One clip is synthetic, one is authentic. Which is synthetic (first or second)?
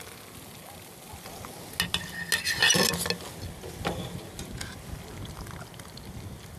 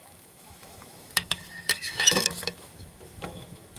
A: second